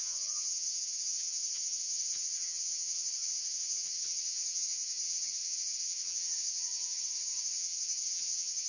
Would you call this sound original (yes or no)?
no